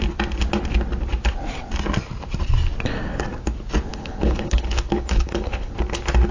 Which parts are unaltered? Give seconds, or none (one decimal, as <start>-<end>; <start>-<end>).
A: 0.0-3.9; 5.7-6.3